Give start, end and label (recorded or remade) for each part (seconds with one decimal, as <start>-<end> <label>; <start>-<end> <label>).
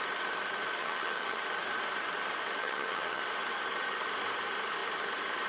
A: 0.0-0.8 recorded; 0.8-1.4 remade; 1.4-2.6 recorded; 2.6-3.2 remade; 3.2-5.5 recorded